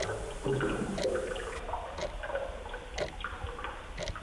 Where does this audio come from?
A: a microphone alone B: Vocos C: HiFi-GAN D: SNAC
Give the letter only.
A